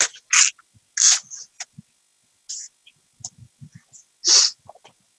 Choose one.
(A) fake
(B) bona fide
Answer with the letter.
B